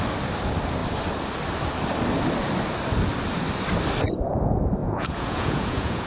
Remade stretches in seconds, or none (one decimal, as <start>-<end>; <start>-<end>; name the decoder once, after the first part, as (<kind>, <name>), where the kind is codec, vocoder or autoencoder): 4.8-6.1 (vocoder, Vocos)